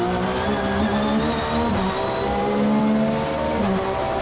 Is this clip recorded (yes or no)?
yes